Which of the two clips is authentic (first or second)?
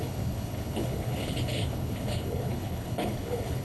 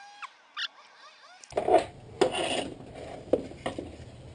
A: second